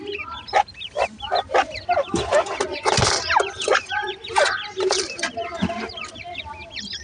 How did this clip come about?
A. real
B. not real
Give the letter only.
A